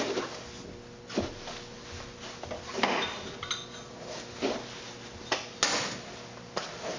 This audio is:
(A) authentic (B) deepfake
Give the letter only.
A